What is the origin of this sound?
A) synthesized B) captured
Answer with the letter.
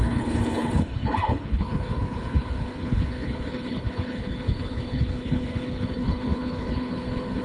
A